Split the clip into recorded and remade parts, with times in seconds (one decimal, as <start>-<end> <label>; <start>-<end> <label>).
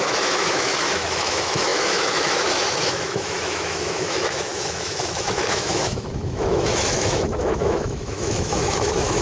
0.0-9.2 remade